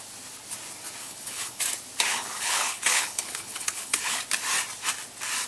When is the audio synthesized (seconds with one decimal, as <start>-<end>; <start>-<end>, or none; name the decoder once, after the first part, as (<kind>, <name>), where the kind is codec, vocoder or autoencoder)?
1.0-1.6 (codec, HILCodec); 2.1-4.2